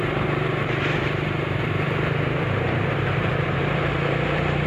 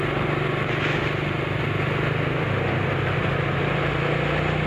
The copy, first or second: first